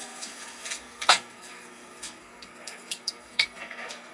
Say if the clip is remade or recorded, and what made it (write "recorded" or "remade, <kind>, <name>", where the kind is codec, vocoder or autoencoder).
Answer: remade, codec, SNAC